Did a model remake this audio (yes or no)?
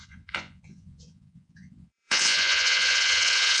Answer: yes